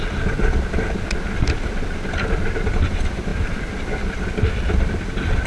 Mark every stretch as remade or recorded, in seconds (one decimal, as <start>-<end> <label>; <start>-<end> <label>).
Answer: 0.0-5.5 recorded